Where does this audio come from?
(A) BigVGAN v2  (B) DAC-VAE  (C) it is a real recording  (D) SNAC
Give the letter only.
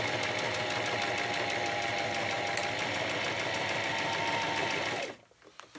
C